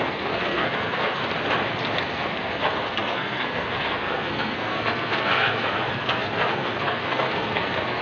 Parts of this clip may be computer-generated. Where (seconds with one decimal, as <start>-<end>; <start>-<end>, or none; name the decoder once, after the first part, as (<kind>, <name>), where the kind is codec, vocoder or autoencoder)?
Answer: 0.0-1.2 (codec, SNAC); 2.0-8.0